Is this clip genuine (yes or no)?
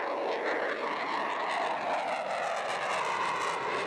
yes